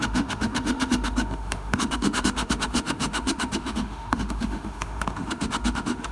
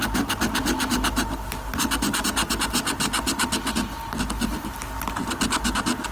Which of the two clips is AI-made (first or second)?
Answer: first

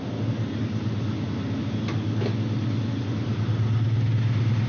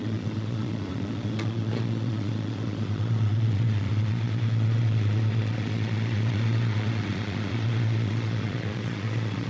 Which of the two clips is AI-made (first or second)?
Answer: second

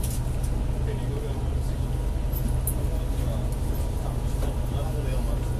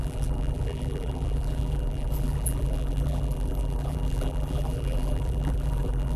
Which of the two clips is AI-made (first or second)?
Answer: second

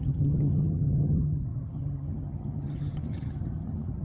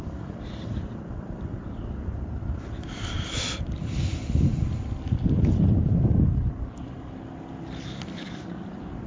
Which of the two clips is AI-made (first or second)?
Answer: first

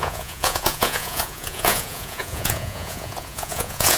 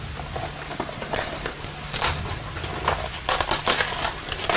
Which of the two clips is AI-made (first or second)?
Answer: first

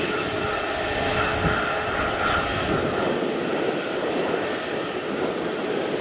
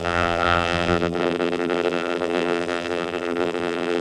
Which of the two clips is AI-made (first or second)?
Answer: second